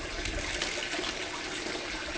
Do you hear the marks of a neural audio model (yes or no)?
no